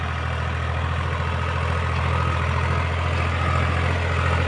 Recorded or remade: recorded